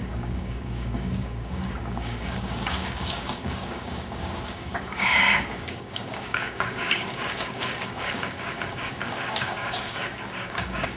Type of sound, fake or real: fake